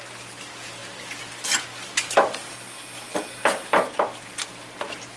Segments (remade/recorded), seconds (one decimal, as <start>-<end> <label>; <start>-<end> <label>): 0.0-5.2 recorded